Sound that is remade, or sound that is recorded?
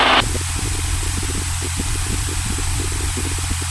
recorded